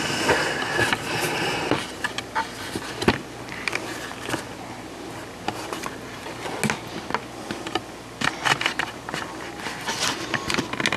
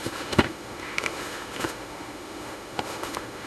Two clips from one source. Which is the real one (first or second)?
first